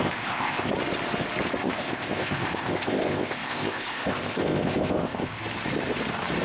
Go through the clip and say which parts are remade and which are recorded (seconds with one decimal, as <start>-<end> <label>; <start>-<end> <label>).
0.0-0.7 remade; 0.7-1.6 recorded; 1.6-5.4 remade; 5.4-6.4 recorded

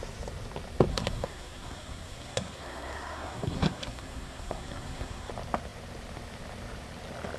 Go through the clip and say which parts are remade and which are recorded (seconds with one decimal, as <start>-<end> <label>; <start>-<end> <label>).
0.0-0.9 recorded; 0.9-5.3 remade; 5.3-7.4 recorded

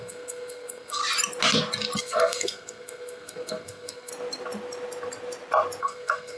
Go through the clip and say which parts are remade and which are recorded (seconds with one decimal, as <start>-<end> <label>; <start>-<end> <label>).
0.0-1.0 remade; 1.0-2.0 recorded; 2.0-4.1 remade; 4.1-5.8 recorded; 5.8-6.4 remade

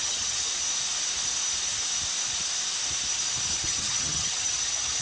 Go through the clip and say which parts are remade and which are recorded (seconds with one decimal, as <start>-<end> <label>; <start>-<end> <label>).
0.0-0.5 remade; 0.5-3.5 recorded; 3.5-5.0 remade

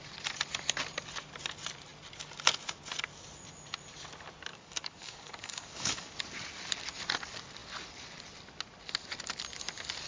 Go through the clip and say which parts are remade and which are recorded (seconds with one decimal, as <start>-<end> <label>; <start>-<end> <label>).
0.0-4.5 recorded; 4.5-6.1 remade; 6.1-10.1 recorded